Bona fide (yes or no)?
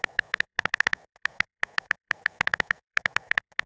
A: no